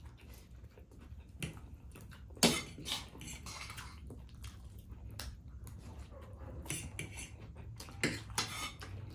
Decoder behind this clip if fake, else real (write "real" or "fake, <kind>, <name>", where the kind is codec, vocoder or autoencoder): real